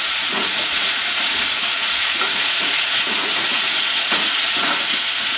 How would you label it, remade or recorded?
remade